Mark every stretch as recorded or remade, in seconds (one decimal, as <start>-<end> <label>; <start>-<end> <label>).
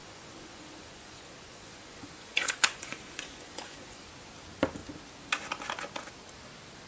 0.0-4.1 remade; 4.1-6.9 recorded